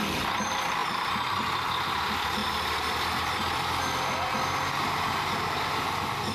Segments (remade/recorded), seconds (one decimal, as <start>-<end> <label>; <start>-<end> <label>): 0.0-0.8 remade; 0.8-1.4 recorded; 1.4-2.4 remade; 2.4-5.5 recorded; 5.5-6.3 remade